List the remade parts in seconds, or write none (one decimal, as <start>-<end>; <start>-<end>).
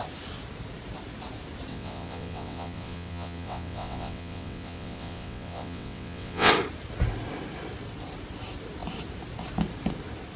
1.7-6.5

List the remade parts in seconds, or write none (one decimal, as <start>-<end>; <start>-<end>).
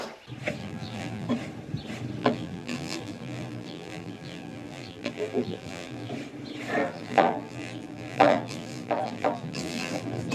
0.6-1.3; 2.2-6.1; 6.8-10.3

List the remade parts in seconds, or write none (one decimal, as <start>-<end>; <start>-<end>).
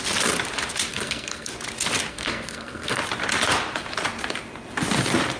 0.9-1.5; 2.1-3.0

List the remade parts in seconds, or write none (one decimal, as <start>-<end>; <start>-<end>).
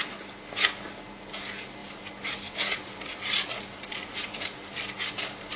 none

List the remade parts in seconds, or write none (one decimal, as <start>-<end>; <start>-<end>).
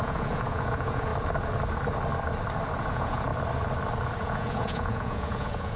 0.0-1.1; 2.9-3.3; 4.2-5.8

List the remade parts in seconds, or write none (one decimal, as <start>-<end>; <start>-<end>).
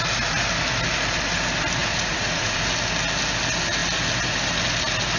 1.8-2.6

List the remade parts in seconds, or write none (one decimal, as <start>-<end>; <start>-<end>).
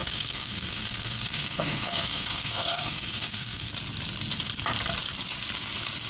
0.0-3.7